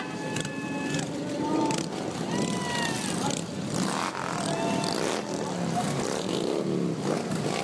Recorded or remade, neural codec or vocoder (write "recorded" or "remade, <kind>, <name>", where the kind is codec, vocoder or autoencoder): recorded